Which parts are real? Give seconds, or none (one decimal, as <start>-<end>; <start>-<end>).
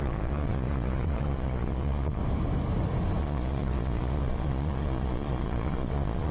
2.2-3.2